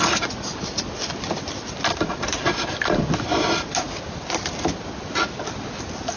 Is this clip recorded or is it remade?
recorded